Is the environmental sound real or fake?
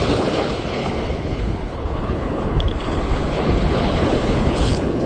fake